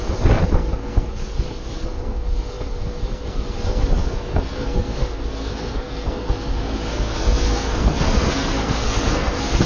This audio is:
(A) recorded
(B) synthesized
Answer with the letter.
B